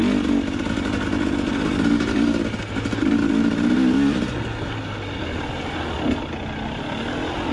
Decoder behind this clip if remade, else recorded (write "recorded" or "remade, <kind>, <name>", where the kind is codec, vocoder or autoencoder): recorded